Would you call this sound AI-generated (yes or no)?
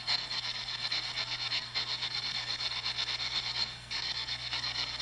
yes